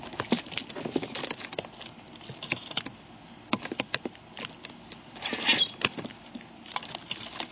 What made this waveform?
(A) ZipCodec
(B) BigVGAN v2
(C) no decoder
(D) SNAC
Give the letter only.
C